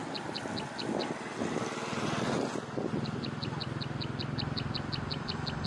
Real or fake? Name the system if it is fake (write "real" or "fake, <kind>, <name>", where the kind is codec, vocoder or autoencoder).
real